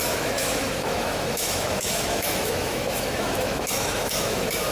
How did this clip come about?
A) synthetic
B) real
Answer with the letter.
A